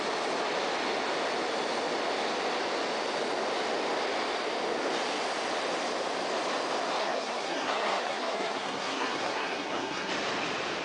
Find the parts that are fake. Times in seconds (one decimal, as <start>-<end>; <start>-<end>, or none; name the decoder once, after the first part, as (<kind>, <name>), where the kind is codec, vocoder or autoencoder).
7.0-10.1 (codec, SNAC)